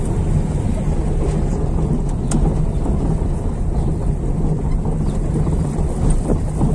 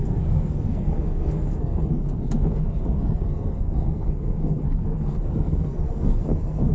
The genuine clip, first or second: first